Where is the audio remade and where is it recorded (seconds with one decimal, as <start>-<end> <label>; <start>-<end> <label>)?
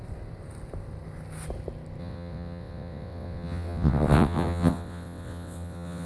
0.0-2.0 recorded; 2.0-6.1 remade